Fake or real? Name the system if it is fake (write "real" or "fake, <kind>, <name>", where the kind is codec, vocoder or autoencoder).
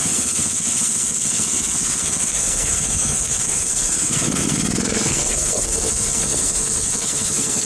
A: fake, codec, SNAC